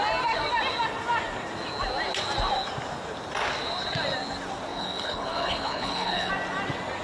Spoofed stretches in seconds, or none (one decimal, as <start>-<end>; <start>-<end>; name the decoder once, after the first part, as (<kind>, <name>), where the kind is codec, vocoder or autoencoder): 4.7-6.3 (codec, HILCodec)